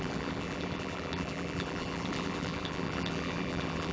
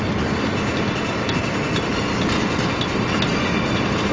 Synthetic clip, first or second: first